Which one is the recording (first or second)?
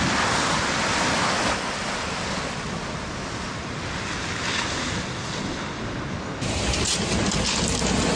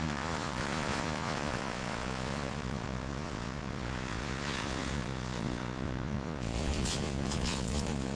first